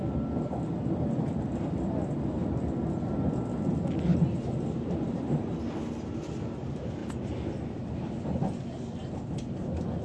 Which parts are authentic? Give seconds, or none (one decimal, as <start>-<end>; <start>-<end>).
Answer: 0.0-10.0